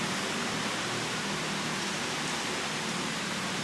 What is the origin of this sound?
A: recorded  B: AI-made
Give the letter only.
A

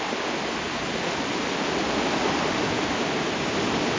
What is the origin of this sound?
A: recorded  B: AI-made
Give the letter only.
A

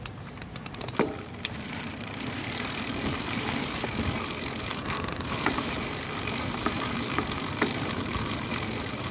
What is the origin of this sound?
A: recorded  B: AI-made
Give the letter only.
B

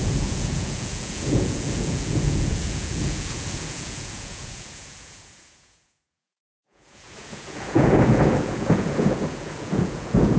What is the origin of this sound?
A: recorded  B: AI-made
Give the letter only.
B